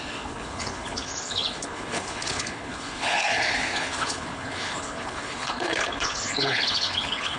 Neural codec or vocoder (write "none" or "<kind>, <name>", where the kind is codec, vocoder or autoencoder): codec, HILCodec